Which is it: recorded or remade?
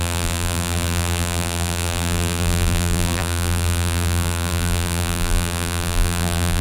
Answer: remade